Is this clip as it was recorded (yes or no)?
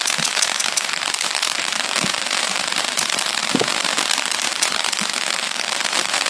no